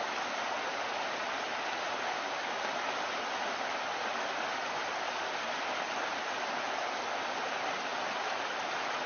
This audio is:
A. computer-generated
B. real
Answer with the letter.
B